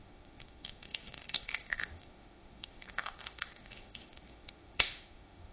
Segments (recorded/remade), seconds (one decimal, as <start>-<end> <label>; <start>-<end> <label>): 0.0-5.5 remade